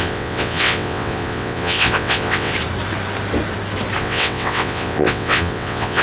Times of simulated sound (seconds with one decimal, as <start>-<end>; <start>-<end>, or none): 0.0-2.5; 4.0-6.0